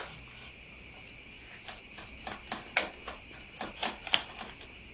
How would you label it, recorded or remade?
recorded